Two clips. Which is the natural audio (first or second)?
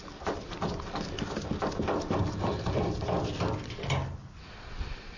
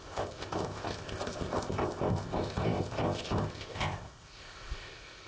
first